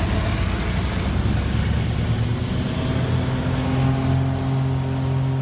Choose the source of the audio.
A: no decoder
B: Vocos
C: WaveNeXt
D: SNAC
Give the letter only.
A